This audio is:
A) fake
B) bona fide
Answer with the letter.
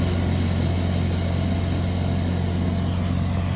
B